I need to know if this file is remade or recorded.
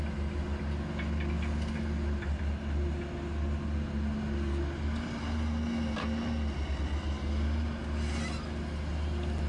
recorded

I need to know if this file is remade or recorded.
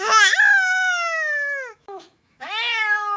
remade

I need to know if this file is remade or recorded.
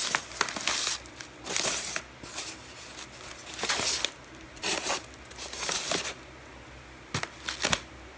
recorded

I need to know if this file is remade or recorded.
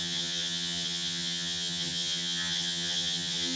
remade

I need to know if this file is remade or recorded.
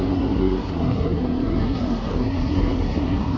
remade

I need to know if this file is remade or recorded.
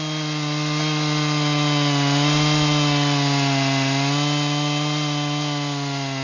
recorded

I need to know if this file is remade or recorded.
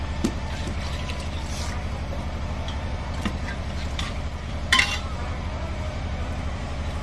remade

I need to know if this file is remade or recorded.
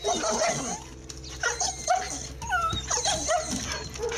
recorded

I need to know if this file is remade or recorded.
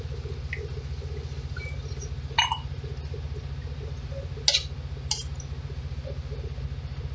recorded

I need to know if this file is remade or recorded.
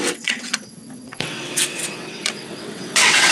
remade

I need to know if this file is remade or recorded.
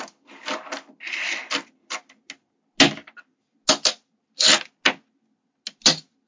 recorded